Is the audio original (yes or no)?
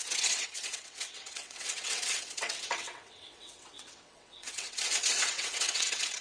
no